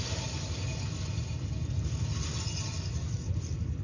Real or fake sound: real